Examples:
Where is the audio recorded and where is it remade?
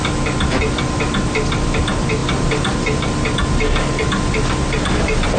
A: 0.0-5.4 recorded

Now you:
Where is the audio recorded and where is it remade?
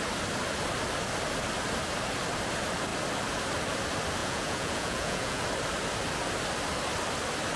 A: 0.0-4.2 recorded; 4.2-5.4 remade; 5.4-7.6 recorded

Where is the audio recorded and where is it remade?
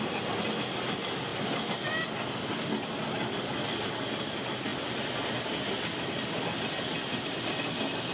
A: 0.0-8.1 recorded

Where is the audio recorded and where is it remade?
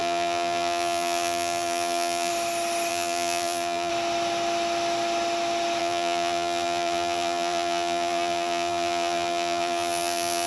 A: 0.0-2.3 remade; 2.3-2.9 recorded; 2.9-3.9 remade; 3.9-5.8 recorded; 5.8-10.5 remade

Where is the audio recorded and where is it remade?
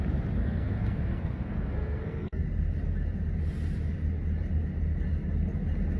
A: 0.0-0.4 recorded; 0.4-2.4 remade; 2.4-6.0 recorded